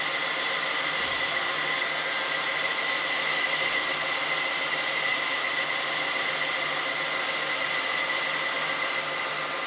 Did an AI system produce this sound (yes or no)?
no